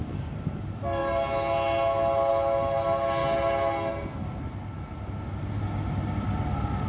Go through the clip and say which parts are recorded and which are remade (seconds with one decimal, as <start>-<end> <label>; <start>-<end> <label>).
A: 0.0-6.9 recorded